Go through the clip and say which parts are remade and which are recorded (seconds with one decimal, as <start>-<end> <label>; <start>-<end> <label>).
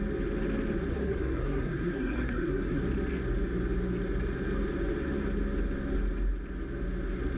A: 0.0-0.9 recorded; 0.9-2.8 remade; 2.8-7.4 recorded